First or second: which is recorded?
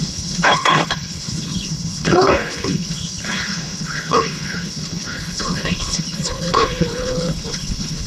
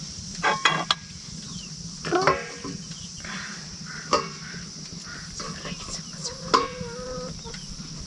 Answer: second